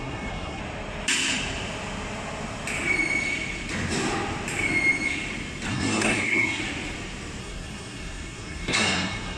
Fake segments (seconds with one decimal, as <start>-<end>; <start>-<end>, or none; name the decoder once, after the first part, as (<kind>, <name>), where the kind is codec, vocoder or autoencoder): 0.0-0.6 (codec, SNAC); 5.7-6.6; 7.4-9.4